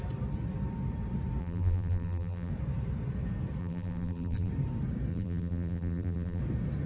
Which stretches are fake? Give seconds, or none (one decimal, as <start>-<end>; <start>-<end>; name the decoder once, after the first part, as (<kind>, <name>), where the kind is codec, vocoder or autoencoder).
1.4-2.5 (vocoder, BigVGAN v2); 3.6-4.5; 5.1-6.4